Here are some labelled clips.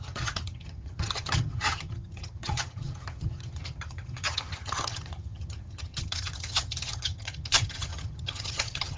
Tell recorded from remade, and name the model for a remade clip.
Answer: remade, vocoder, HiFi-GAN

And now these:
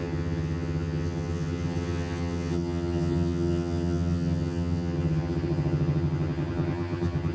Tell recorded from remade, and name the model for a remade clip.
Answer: remade, vocoder, HiFi-GAN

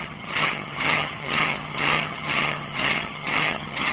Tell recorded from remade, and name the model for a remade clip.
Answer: remade, vocoder, HiFi-GAN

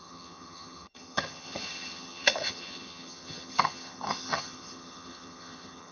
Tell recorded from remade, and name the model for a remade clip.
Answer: remade, vocoder, HiFi-GAN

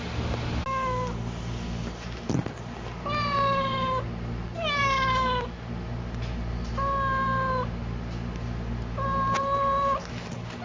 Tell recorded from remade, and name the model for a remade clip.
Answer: recorded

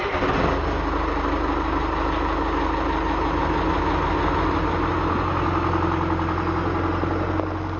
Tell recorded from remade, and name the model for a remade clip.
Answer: recorded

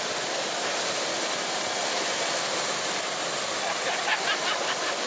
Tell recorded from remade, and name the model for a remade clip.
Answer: recorded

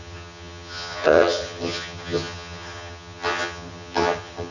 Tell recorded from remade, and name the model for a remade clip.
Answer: remade, vocoder, HiFi-GAN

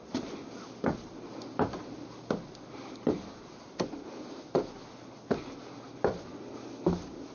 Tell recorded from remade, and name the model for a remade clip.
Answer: recorded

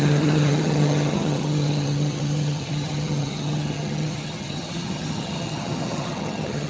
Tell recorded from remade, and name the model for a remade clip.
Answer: remade, vocoder, HiFi-GAN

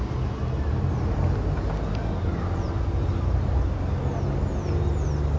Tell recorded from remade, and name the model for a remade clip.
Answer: recorded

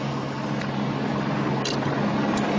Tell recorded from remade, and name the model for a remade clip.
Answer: recorded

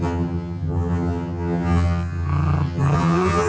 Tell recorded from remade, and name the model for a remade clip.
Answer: remade, vocoder, HiFi-GAN